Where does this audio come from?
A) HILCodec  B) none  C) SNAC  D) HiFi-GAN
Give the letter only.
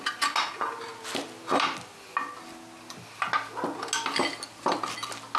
B